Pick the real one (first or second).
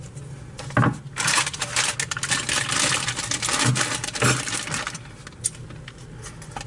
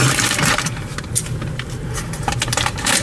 first